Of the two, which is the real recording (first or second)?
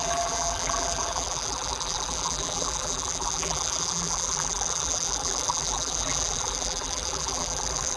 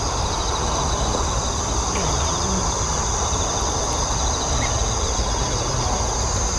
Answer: second